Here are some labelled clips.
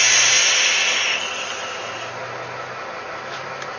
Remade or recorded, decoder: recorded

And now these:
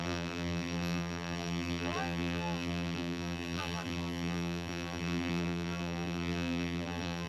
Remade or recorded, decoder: remade, vocoder, BigVGAN v2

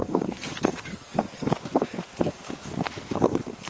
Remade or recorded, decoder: remade, codec, SNAC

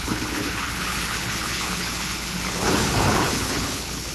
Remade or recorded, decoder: remade, codec, HILCodec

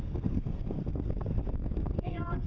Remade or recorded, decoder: remade, codec, SNAC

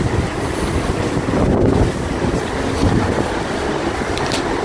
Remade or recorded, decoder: recorded